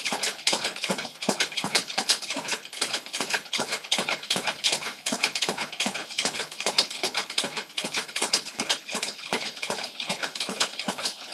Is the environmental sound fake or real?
fake